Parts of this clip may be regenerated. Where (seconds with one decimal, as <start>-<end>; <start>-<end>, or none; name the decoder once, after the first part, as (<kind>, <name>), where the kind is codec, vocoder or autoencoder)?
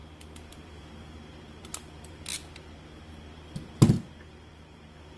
0.0-2.3 (vocoder, BigVGAN v2); 4.5-5.2